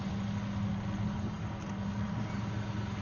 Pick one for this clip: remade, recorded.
recorded